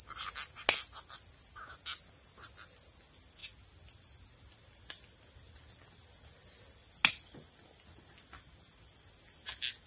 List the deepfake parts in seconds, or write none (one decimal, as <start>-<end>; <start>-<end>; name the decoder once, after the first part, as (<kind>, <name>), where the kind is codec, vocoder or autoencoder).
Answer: none